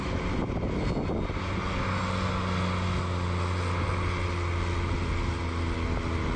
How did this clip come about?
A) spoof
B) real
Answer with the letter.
B